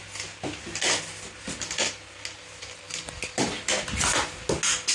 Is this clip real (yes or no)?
yes